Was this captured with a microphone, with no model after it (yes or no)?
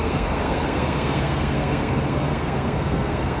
no